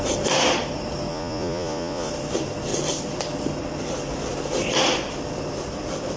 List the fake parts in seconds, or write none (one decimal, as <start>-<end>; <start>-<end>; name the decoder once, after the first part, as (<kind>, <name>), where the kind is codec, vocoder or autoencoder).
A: 1.1-2.1 (vocoder, Vocos)